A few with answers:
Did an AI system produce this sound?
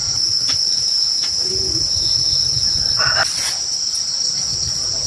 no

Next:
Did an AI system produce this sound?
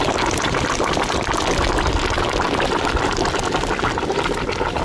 no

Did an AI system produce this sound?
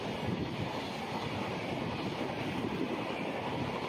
no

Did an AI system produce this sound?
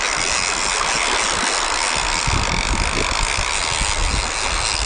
no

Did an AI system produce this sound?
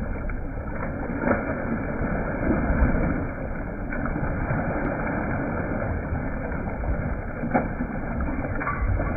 no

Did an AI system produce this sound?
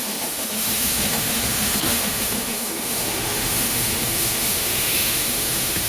yes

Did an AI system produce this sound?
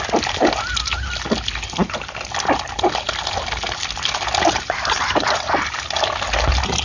no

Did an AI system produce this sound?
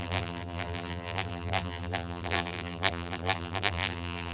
yes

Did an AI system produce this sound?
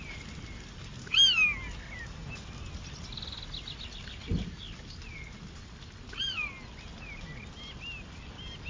no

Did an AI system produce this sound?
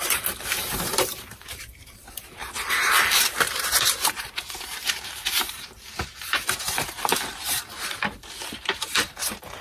yes